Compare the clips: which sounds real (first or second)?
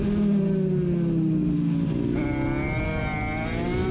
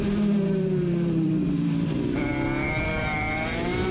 first